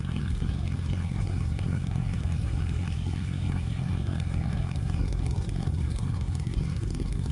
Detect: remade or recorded remade